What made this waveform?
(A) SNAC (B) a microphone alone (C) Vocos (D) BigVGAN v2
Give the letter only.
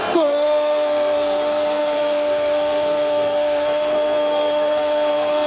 A